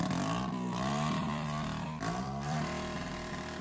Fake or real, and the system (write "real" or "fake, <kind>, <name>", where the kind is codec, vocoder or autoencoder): fake, vocoder, BigVGAN v2